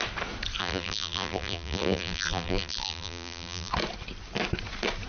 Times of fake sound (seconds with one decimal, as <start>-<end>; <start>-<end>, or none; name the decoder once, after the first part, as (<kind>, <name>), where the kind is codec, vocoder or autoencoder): 0.6-3.7 (vocoder, BigVGAN v2)